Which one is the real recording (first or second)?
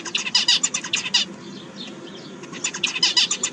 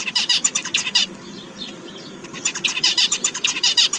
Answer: first